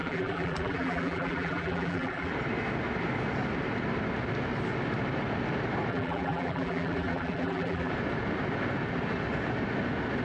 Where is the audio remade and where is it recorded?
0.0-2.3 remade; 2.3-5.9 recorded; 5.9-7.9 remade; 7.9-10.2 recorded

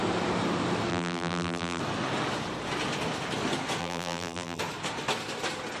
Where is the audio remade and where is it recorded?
0.0-0.9 recorded; 0.9-1.8 remade; 1.8-3.8 recorded; 3.8-4.6 remade; 4.6-5.8 recorded

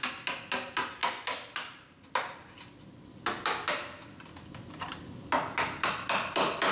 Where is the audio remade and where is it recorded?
0.0-6.7 recorded